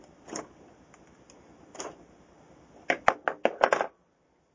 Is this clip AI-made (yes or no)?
no